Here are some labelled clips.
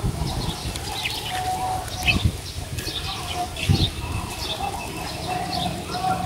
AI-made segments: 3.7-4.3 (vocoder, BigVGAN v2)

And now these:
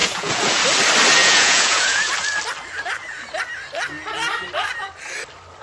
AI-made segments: 0.0-0.6 (vocoder, Vocos); 1.2-2.1

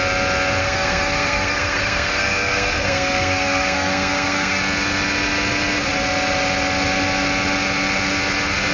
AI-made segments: 0.6-4.6 (codec, SNAC)

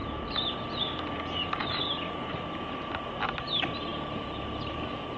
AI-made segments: none

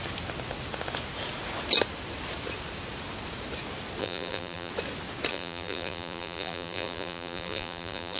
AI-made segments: 4.0-4.7 (vocoder, BigVGAN v2); 5.3-8.2

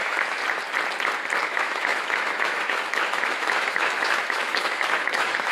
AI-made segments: 0.0-0.4 (autoencoder, DAC-VAE); 1.4-5.5

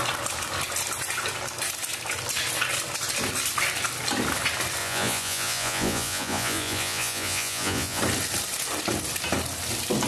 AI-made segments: 4.8-8.0 (vocoder, Vocos)